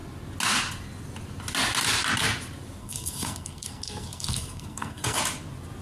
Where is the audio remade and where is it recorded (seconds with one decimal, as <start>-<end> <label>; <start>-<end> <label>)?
0.0-2.8 recorded; 2.8-5.2 remade; 5.2-5.8 recorded